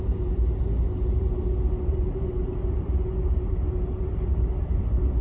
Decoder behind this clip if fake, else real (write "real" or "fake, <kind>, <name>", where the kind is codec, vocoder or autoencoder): real